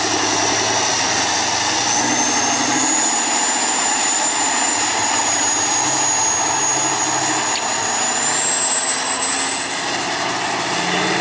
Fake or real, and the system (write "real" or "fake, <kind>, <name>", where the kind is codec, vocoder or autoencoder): real